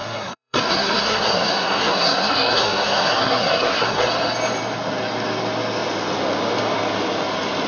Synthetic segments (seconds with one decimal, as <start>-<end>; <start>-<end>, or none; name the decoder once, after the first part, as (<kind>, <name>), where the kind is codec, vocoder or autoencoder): 0.0-4.1 (codec, SNAC)

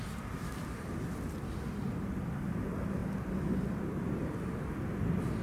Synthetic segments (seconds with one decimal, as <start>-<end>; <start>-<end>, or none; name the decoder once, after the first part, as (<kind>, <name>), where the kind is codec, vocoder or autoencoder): none

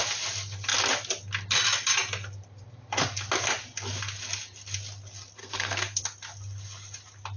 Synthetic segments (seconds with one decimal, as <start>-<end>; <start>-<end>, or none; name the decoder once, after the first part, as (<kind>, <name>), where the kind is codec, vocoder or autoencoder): 5.4-6.0 (codec, SNAC)